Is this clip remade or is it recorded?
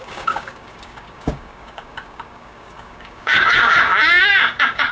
remade